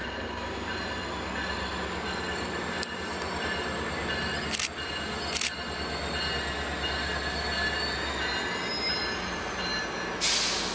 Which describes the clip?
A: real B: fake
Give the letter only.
A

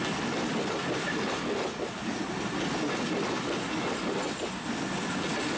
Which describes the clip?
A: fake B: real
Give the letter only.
B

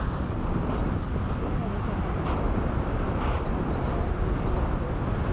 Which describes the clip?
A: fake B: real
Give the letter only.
B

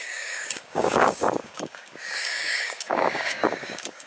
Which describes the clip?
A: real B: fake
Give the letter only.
B